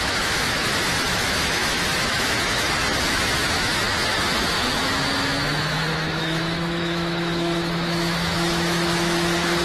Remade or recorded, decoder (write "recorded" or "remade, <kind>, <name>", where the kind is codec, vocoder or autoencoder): remade, autoencoder, DAC-VAE